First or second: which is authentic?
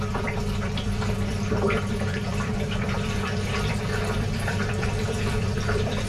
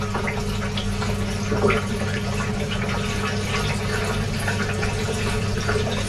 second